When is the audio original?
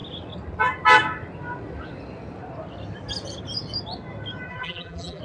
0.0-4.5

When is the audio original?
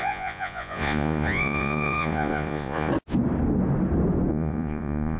2.9-4.3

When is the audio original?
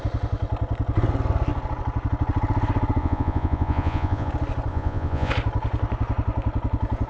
0.0-3.0; 4.3-4.7; 5.3-7.1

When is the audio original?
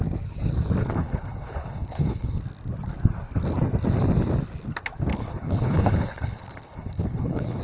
0.0-0.8; 2.4-5.1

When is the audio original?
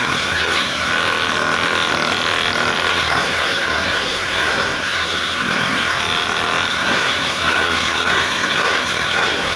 0.9-2.9; 6.0-6.7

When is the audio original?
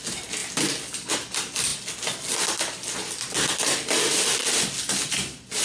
0.0-5.6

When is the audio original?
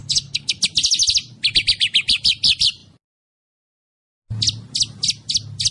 0.6-5.7